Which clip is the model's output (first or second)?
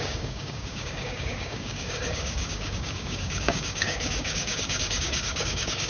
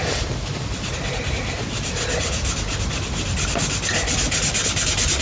first